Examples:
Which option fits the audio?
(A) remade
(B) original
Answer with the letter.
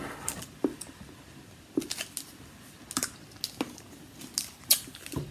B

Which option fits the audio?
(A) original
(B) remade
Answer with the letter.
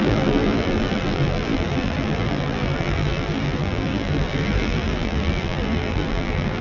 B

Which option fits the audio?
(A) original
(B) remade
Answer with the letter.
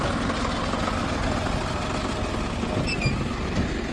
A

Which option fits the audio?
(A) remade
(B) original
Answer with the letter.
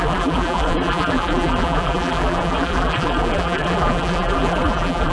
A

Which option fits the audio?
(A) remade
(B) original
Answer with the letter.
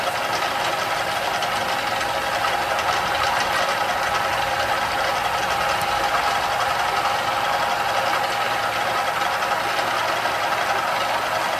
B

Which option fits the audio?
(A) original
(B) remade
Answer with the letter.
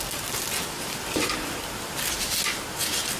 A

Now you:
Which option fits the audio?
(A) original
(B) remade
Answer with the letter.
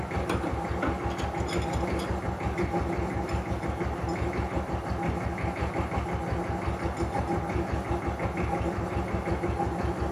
A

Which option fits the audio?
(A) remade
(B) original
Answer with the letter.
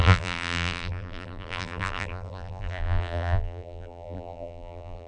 A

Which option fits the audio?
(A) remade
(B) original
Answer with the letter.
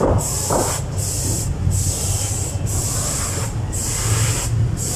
A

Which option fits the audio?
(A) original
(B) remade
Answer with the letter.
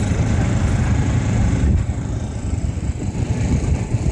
B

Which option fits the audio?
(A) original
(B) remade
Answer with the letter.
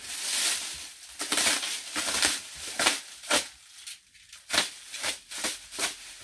A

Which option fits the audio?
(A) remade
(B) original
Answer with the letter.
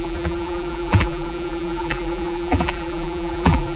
A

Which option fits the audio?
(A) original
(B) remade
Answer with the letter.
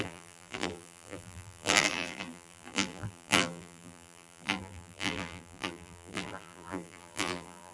B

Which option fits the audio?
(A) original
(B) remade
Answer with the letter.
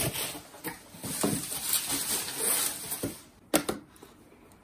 A